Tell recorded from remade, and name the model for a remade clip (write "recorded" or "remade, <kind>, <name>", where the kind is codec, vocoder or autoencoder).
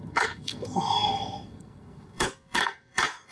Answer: remade, codec, SNAC